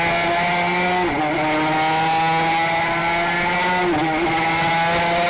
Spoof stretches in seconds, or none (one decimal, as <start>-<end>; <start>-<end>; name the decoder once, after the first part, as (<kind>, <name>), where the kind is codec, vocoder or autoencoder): none